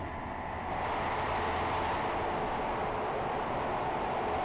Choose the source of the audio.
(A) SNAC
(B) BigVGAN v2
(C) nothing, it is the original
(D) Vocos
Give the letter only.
C